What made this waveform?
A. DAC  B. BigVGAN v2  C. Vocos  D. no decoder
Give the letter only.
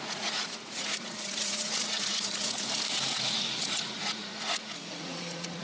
C